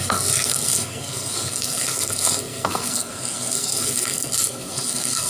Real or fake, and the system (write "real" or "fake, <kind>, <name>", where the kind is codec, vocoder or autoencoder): fake, codec, SNAC